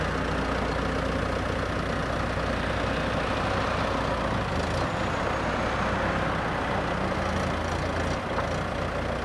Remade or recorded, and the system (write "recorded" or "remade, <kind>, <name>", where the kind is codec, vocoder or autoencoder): recorded